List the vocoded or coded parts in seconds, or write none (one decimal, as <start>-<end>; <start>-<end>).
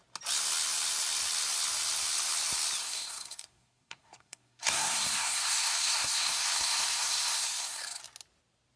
2.8-8.0